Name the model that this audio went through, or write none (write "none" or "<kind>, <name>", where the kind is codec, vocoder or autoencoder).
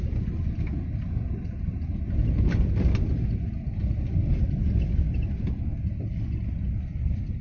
none